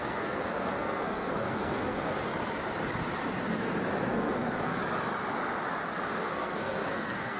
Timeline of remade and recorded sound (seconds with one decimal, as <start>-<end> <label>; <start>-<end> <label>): 0.0-2.1 remade; 2.1-4.1 recorded; 4.1-4.8 remade; 4.8-6.2 recorded; 6.2-7.4 remade